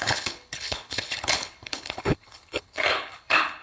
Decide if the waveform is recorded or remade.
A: remade